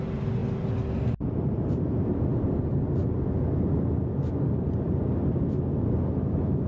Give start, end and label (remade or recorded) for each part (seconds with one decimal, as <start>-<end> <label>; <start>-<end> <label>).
0.0-6.7 recorded